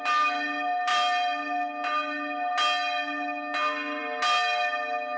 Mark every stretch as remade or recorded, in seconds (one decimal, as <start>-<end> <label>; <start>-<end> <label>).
0.0-5.2 recorded

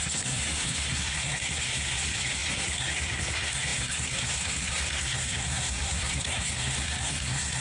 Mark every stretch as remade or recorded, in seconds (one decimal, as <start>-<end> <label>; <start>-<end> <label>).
0.0-7.6 remade

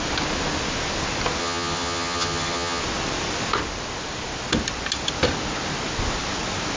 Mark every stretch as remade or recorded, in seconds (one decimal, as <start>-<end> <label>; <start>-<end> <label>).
0.0-1.4 recorded; 1.4-2.8 remade; 2.8-6.8 recorded

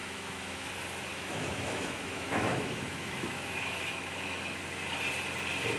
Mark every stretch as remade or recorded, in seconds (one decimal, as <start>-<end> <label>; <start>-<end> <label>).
0.0-0.7 remade; 0.7-1.1 recorded; 1.1-4.6 remade; 4.6-5.8 recorded

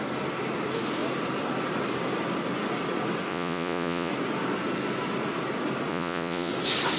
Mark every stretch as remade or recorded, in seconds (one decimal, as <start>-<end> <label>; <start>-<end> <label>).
0.0-3.3 recorded; 3.3-4.1 remade; 4.1-5.9 recorded; 5.9-6.5 remade; 6.5-7.0 recorded